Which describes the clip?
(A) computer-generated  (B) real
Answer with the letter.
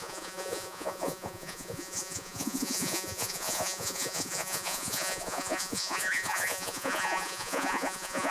A